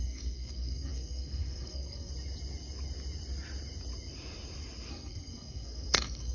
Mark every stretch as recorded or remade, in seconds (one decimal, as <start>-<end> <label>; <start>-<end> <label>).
0.0-2.1 remade; 2.1-4.9 recorded; 4.9-6.3 remade